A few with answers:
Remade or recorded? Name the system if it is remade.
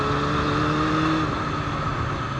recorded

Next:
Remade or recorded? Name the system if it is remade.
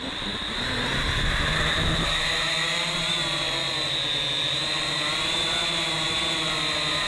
recorded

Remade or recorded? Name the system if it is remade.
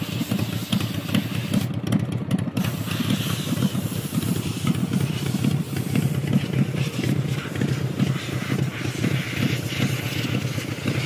recorded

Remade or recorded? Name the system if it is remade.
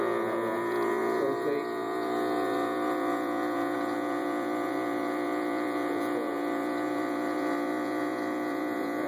remade, vocoder, Vocos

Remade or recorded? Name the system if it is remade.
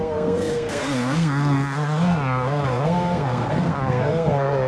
remade, codec, SNAC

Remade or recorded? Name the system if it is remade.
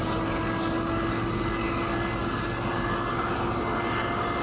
recorded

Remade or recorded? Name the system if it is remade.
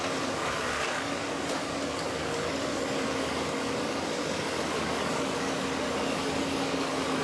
remade, codec, DAC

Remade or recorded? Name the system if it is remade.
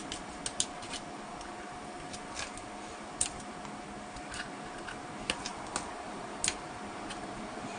recorded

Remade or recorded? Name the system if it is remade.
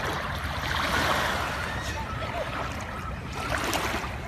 recorded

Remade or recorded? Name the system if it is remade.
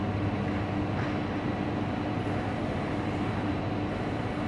recorded